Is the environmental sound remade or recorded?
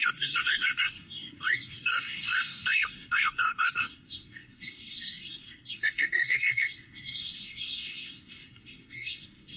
remade